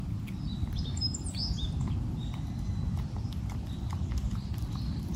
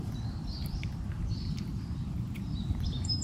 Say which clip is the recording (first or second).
first